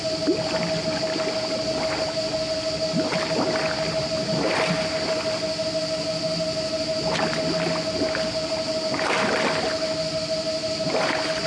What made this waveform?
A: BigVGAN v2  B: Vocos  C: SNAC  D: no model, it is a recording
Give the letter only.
D